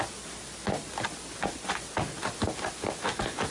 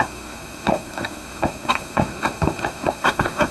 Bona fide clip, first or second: first